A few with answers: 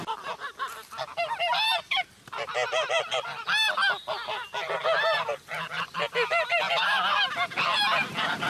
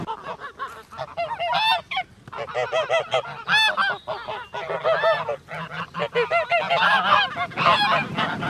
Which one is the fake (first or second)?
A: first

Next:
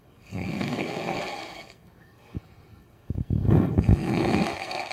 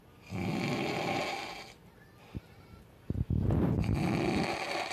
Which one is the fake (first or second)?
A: first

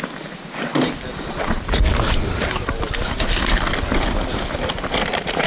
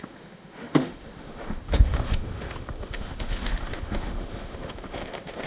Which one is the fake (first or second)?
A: second